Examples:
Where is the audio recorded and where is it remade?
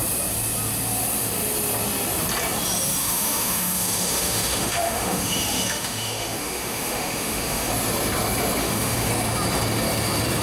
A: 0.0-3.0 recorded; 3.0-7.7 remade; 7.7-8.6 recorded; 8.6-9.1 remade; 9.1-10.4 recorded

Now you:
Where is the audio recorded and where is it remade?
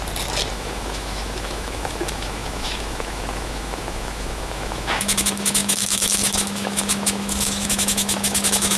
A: 0.0-0.5 recorded; 0.5-8.8 remade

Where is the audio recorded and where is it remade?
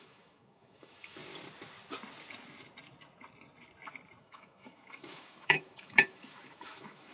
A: 0.0-1.2 remade; 1.2-4.2 recorded; 4.2-7.1 remade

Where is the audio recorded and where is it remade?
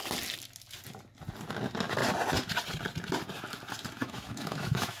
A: 0.0-4.0 recorded; 4.0-5.0 remade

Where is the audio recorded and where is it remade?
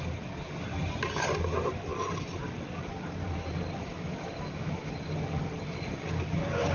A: 0.0-3.8 recorded; 3.8-4.9 remade; 4.9-6.7 recorded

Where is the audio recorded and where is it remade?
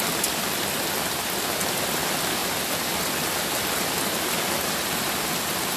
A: 0.0-5.8 recorded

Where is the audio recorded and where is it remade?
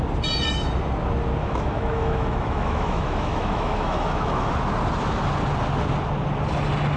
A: 0.0-1.4 recorded; 1.4-4.5 remade; 4.5-7.0 recorded